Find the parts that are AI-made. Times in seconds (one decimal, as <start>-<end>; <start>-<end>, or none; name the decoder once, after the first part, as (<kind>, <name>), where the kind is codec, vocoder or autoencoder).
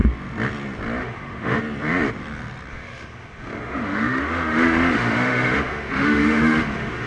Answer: 1.0-1.6 (autoencoder, DAC-VAE); 2.7-7.1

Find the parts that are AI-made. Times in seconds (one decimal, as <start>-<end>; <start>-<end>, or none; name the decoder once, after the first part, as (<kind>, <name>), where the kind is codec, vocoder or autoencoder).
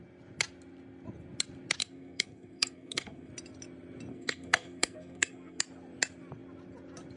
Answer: 1.8-3.3 (codec, SNAC); 4.1-5.6